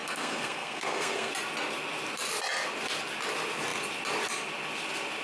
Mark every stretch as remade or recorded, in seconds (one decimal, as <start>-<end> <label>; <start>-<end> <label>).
0.0-1.3 remade; 1.3-5.2 recorded